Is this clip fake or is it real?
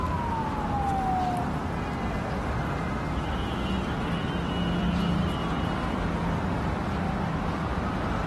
real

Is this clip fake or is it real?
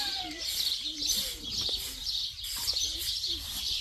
fake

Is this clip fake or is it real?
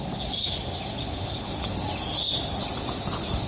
real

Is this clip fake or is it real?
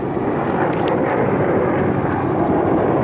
real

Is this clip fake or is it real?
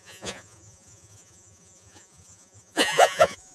fake